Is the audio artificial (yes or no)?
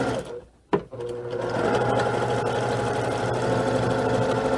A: no